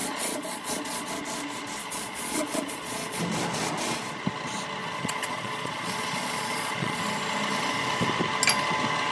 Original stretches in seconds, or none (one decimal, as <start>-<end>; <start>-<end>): 1.1-1.8; 3.2-4.8; 7.0-9.1